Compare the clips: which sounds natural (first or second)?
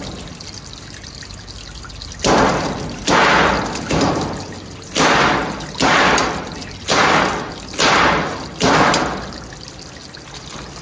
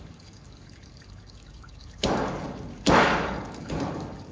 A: first